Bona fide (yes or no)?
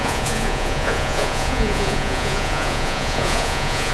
no